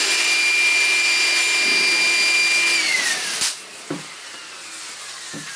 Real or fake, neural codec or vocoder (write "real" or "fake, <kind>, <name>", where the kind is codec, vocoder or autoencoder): real